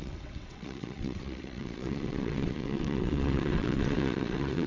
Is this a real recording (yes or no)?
no